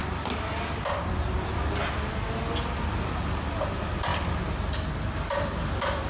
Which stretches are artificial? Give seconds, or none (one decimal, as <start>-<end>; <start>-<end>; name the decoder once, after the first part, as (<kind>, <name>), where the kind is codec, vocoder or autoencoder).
none